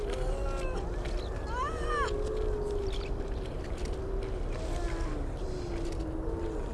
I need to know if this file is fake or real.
real